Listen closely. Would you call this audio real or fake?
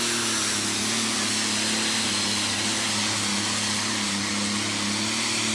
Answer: real